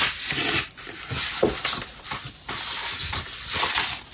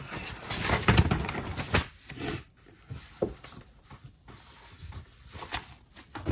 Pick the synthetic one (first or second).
second